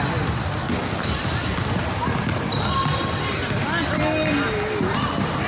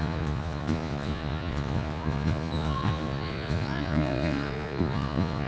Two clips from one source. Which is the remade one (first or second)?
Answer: second